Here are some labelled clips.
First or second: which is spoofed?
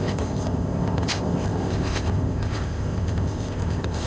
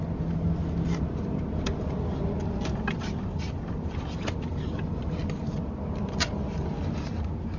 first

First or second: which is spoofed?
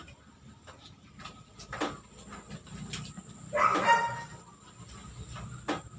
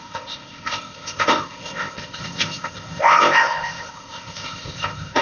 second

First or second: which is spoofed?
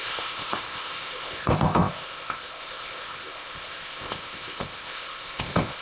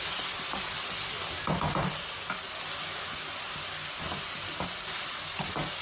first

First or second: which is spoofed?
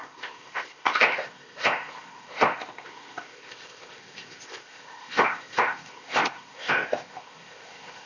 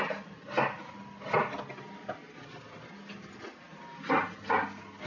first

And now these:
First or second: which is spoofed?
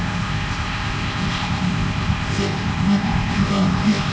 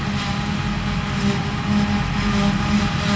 first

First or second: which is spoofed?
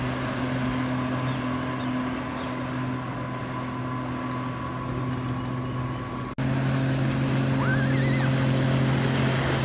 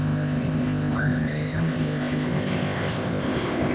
second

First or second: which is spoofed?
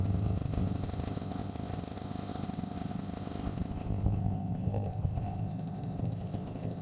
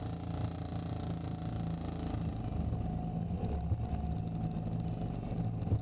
first